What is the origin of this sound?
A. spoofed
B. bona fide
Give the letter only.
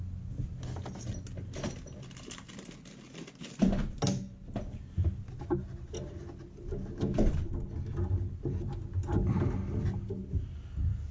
B